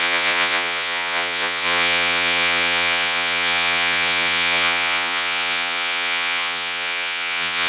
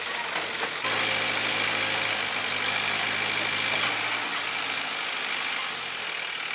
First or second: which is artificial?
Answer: first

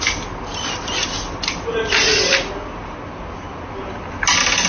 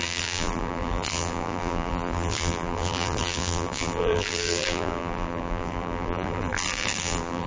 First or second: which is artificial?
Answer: second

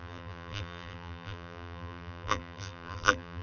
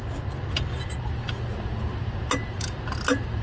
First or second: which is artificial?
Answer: first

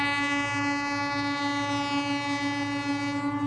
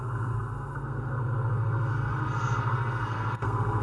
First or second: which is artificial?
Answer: second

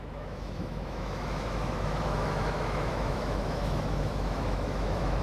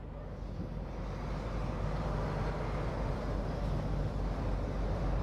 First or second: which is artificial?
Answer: first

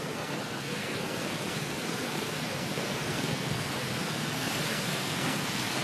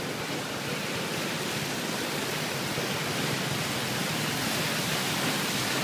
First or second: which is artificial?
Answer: first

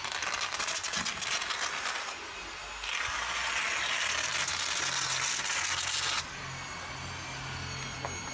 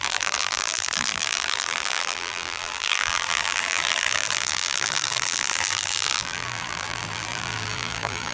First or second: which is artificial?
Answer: second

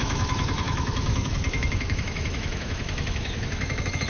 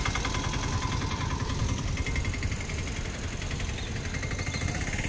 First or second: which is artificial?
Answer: first